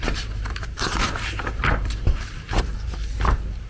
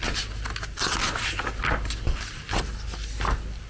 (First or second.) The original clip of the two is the second